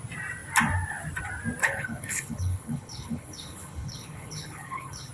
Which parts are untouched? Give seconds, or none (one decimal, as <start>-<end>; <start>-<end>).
0.0-1.6